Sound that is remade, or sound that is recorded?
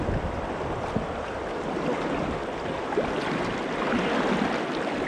recorded